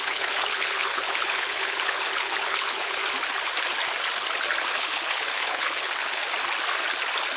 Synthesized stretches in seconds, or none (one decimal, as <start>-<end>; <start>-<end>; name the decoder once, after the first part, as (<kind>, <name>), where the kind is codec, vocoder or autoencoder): 0.0-3.0 (codec, HILCodec); 4.6-6.2